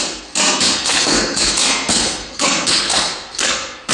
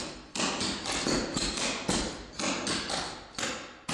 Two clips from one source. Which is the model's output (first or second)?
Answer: first